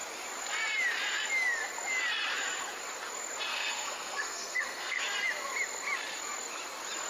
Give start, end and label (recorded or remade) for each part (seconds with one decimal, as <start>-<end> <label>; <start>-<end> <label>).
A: 0.0-3.5 recorded; 3.5-5.0 remade; 5.0-7.1 recorded